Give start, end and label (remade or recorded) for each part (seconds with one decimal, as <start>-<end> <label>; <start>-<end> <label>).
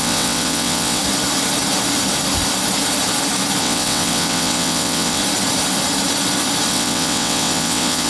0.0-1.0 remade; 1.0-3.6 recorded; 3.6-5.2 remade; 5.2-6.7 recorded; 6.7-8.1 remade